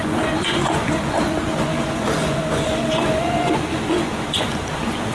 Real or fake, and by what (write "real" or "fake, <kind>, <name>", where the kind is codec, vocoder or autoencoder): fake, vocoder, Vocos